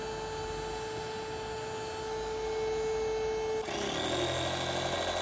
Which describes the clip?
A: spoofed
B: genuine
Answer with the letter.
B